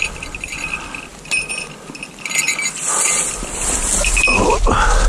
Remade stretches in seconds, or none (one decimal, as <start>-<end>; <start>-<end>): none